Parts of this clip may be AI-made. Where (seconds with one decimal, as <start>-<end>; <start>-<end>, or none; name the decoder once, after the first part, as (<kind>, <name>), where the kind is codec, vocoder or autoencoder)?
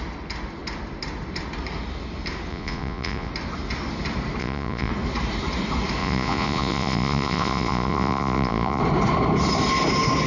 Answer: 2.5-3.3 (vocoder, Vocos); 4.4-4.9; 6.0-8.8